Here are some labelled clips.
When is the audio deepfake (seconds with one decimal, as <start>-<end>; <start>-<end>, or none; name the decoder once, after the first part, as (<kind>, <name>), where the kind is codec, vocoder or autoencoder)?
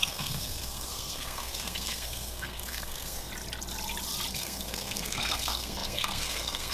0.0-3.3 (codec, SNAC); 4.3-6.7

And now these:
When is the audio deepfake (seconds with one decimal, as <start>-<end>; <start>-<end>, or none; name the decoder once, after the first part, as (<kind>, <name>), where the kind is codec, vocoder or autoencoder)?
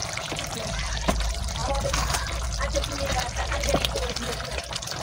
0.5-5.0 (vocoder, BigVGAN v2)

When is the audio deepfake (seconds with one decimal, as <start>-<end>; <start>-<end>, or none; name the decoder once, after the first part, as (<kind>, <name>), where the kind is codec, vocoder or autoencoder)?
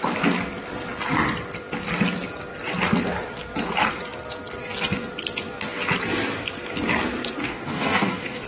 7.4-8.5 (codec, DAC)